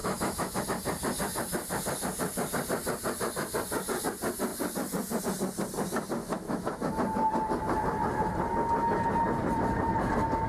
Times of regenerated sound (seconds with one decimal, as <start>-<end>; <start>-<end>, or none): 0.0-0.6; 6.2-6.9